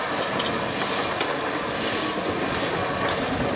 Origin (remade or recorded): recorded